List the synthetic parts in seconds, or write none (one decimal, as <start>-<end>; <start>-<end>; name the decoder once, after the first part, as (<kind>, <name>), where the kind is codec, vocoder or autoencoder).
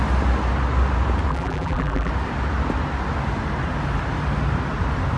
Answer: 1.3-2.1 (vocoder, BigVGAN v2)